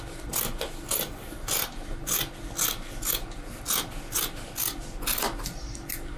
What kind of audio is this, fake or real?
real